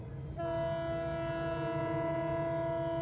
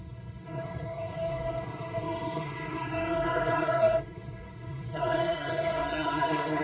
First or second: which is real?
first